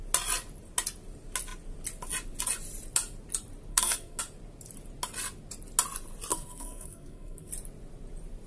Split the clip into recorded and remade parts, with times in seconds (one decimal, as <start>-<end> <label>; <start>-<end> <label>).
0.0-3.7 recorded; 3.7-4.2 remade; 4.2-6.3 recorded; 6.3-7.5 remade; 7.5-8.5 recorded